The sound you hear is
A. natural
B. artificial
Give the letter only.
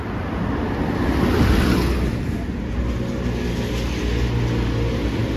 A